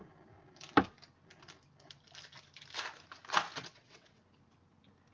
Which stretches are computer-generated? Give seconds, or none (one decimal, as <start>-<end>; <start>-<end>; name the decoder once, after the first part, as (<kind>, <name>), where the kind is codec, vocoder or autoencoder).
3.6-4.2 (vocoder, WaveNeXt)